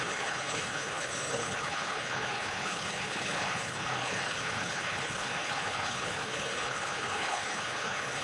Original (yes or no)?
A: no